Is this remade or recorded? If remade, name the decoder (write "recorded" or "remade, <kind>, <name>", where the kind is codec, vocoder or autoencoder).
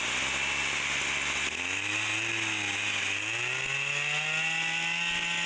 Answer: recorded